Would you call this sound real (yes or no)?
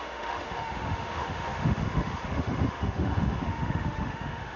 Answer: no